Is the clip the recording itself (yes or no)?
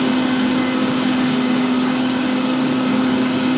no